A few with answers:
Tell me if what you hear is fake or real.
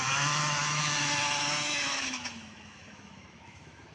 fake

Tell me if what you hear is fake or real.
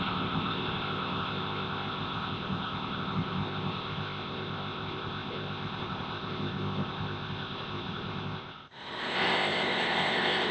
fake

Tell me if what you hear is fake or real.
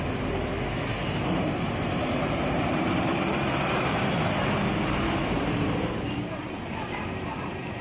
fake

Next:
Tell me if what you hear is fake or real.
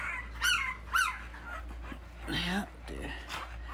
real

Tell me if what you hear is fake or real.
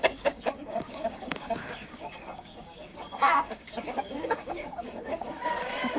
fake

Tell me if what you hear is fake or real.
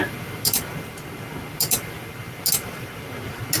real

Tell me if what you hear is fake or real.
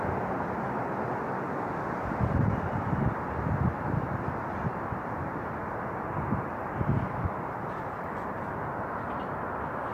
real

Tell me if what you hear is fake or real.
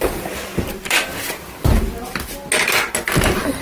real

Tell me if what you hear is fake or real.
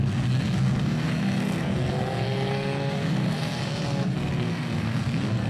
fake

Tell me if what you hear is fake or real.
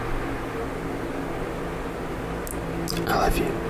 real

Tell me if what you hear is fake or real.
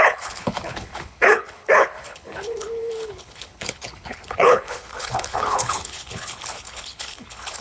fake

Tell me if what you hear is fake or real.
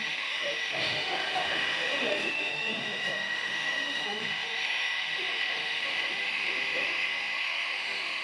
fake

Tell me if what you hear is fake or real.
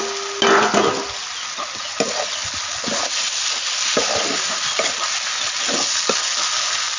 real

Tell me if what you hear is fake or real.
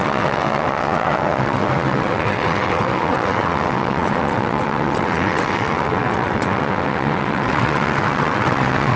fake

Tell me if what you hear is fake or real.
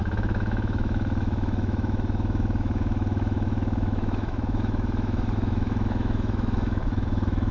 fake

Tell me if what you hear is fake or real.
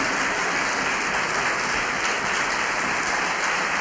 real